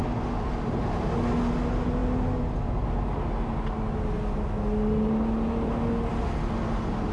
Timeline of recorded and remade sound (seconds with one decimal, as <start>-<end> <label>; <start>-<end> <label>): 0.0-7.1 recorded